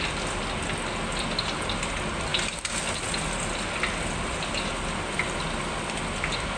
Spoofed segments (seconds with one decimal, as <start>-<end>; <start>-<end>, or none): none